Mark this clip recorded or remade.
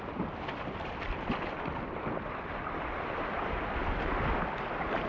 recorded